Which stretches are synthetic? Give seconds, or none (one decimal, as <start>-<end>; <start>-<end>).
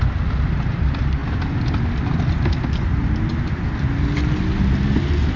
none